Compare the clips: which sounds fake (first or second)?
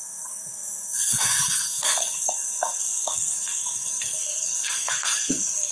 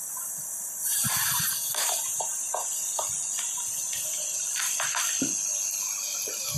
first